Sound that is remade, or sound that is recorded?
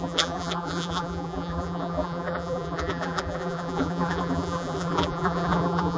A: remade